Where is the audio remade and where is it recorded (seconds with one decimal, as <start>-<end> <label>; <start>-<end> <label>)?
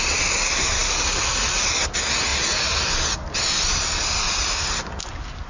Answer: 0.0-5.5 recorded